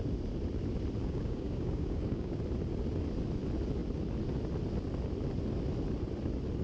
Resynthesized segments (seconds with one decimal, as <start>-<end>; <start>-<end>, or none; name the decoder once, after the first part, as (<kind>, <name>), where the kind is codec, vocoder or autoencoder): 1.0-2.4 (codec, DAC)